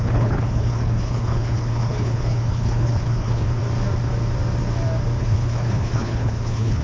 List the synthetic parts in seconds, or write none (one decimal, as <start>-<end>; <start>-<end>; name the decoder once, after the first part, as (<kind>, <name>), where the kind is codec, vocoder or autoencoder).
0.0-3.6 (codec, HILCodec); 5.2-6.8